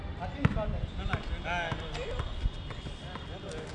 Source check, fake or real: real